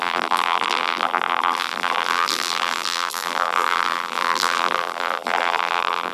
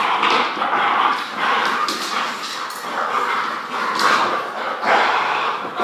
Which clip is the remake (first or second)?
first